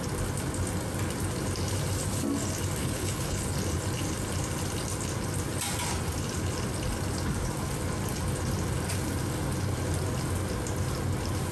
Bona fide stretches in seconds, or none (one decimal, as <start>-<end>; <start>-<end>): 0.0-2.8; 3.4-11.5